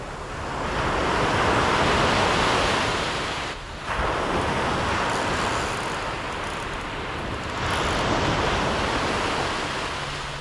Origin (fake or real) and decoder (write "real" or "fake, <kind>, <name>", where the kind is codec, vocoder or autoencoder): real